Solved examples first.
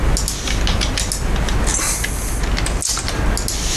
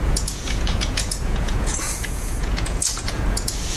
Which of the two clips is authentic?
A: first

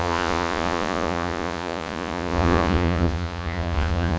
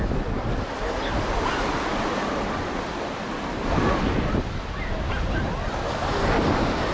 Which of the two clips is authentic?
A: second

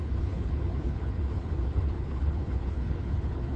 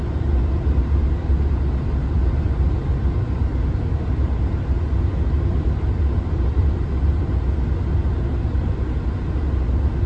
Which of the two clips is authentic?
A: second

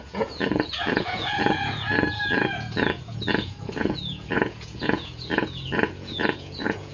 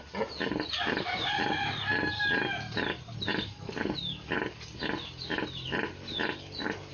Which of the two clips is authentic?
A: second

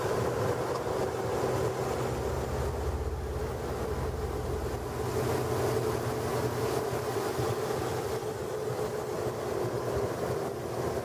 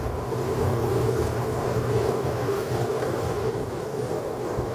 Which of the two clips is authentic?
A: first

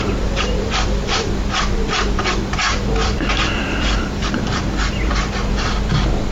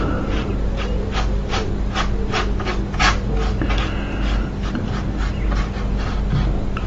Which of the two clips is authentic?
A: second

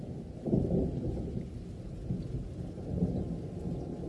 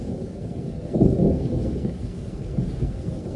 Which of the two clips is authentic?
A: first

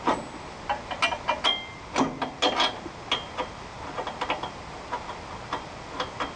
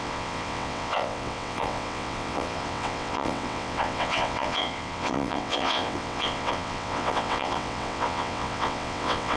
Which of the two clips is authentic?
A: first